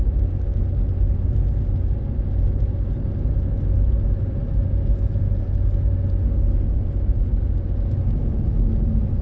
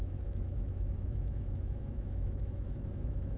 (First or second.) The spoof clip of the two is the second